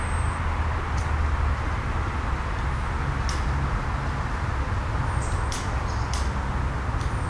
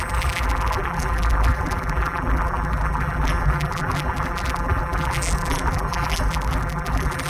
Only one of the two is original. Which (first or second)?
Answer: first